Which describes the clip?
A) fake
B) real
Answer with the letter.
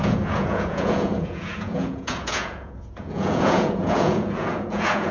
A